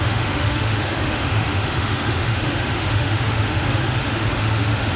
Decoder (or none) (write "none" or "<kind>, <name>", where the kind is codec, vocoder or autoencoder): autoencoder, DAC-VAE